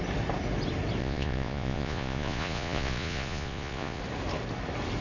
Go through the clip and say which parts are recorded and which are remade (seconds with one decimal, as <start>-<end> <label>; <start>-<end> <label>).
0.0-1.0 recorded; 1.0-4.0 remade; 4.0-5.0 recorded

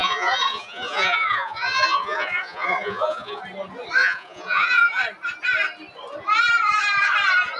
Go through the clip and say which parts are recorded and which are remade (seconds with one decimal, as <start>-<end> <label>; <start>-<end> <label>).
0.0-3.4 remade; 3.4-4.0 recorded; 4.0-5.0 remade; 5.0-7.6 recorded